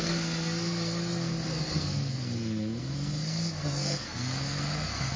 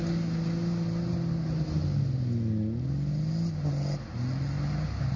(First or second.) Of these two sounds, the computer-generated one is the first